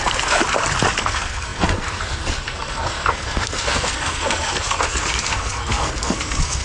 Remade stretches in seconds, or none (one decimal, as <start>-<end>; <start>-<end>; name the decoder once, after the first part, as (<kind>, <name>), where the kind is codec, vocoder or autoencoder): 0.0-0.4 (codec, SNAC); 1.0-6.6